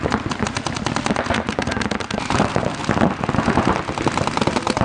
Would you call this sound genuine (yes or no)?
yes